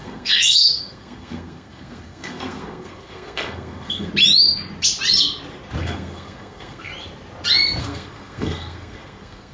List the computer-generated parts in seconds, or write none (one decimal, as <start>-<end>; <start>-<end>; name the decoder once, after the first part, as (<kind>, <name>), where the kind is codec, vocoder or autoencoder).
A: 0.0-4.1 (codec, SNAC); 5.8-6.9; 7.8-9.5